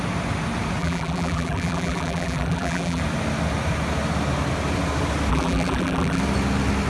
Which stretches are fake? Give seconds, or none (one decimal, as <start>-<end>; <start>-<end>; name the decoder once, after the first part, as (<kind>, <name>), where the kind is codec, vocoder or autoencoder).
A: 0.8-3.0 (vocoder, BigVGAN v2); 5.3-6.2